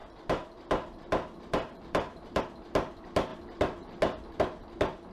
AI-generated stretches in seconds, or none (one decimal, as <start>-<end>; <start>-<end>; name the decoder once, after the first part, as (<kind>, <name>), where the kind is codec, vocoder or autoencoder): 0.0-2.4 (vocoder, BigVGAN v2)